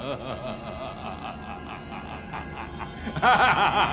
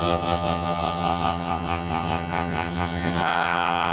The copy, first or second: second